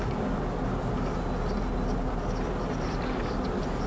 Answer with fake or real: real